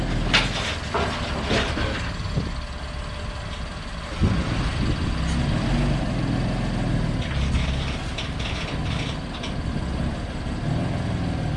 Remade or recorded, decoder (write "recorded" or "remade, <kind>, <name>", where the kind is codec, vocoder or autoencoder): recorded